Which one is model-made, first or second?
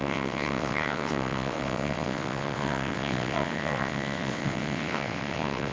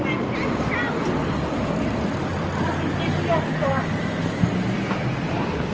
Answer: first